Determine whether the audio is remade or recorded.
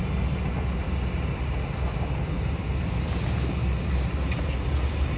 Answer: recorded